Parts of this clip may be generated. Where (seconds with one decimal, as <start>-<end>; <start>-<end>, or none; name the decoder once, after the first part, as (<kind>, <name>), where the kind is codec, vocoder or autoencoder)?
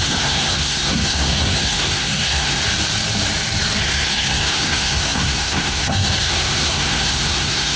0.0-2.6 (codec, SNAC); 3.8-7.8